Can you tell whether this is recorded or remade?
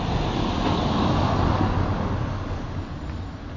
recorded